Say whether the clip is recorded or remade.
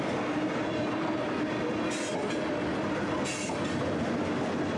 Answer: recorded